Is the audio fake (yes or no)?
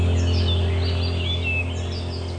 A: no